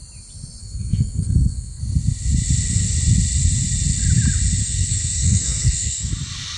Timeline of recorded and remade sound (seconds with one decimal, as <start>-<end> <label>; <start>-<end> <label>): 0.0-0.6 recorded; 0.6-1.8 remade; 1.8-4.6 recorded; 4.6-6.1 remade; 6.1-6.6 recorded